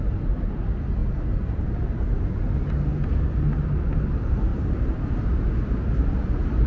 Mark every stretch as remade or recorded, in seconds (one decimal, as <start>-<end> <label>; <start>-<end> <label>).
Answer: 0.0-1.0 recorded; 1.0-2.2 remade; 2.2-4.5 recorded; 4.5-5.4 remade; 5.4-6.7 recorded